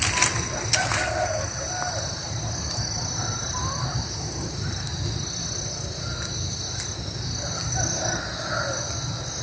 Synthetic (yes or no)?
no